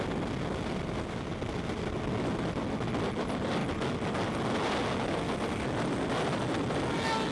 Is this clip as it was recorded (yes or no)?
yes